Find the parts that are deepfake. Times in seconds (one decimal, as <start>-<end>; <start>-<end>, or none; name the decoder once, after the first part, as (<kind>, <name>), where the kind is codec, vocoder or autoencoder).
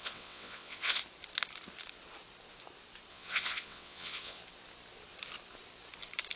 0.0-1.0 (vocoder, WaveNeXt); 3.1-4.4